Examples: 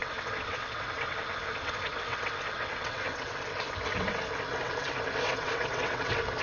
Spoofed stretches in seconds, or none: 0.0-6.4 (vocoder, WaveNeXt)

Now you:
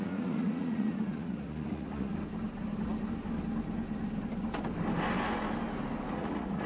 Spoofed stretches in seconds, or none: 0.0-2.1 (vocoder, Vocos); 6.1-6.7

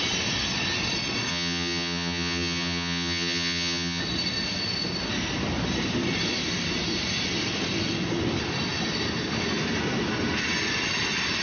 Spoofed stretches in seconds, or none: 1.3-4.0 (vocoder, HiFi-GAN)

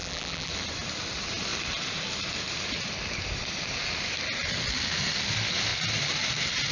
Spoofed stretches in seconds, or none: 0.0-0.5 (vocoder, BigVGAN v2)

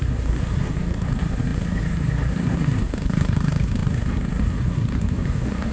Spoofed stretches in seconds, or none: 0.0-5.7 (codec, SNAC)